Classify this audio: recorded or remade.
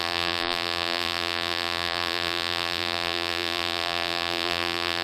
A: remade